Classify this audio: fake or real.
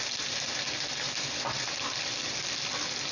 real